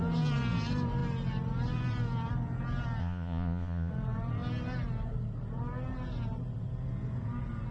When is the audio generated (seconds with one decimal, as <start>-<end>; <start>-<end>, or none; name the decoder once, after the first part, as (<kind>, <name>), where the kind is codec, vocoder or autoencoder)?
3.0-3.9 (vocoder, Vocos)